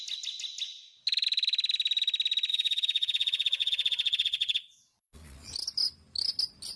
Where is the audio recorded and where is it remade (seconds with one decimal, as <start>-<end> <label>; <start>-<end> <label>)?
0.0-2.5 recorded; 2.5-5.5 remade; 5.5-6.8 recorded